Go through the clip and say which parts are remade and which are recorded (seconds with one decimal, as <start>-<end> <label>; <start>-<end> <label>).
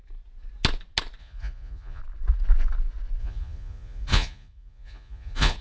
0.0-1.2 recorded; 1.2-2.0 remade; 2.0-3.2 recorded; 3.2-5.6 remade